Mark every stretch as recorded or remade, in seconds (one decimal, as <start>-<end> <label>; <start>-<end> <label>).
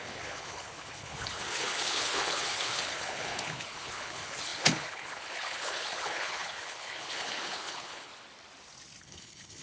0.0-8.1 remade; 8.1-9.0 recorded; 9.0-9.6 remade